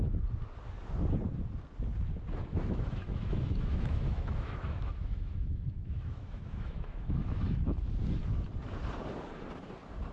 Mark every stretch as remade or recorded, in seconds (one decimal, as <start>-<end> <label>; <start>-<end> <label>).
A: 0.0-2.5 recorded; 2.5-7.8 remade; 7.8-10.1 recorded